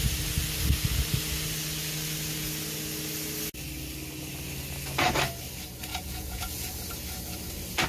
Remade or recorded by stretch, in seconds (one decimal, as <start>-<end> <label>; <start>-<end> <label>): 0.0-5.9 recorded; 5.9-6.7 remade; 6.7-7.9 recorded